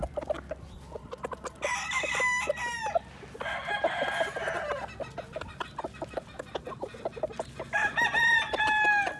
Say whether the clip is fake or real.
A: real